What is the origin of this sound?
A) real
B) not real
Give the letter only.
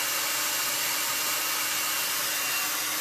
A